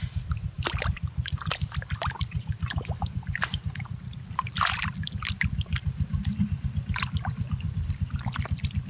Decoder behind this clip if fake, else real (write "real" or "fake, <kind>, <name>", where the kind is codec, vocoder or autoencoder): fake, vocoder, BigVGAN v2